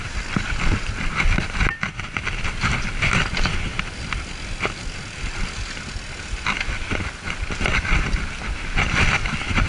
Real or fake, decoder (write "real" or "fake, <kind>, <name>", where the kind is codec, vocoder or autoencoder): real